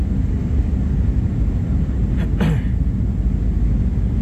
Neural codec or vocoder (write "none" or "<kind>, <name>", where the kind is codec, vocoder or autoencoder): none